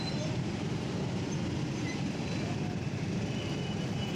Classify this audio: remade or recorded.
remade